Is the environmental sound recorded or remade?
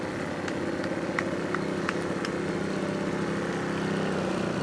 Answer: recorded